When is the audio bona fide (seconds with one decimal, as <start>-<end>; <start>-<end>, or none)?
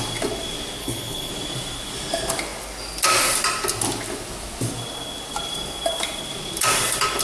0.0-0.8; 1.3-7.2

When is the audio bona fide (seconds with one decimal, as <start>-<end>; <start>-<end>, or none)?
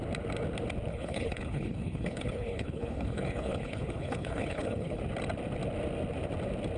0.0-0.9; 5.0-6.8